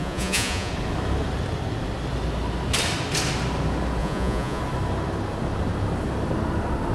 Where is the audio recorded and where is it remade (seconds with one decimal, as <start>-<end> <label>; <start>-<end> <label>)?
0.0-0.7 remade; 0.7-4.0 recorded; 4.0-4.6 remade; 4.6-6.9 recorded